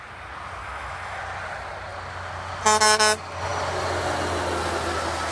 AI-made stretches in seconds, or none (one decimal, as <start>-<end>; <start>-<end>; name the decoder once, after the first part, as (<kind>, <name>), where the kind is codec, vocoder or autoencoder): 0.6-1.2 (autoencoder, DAC-VAE)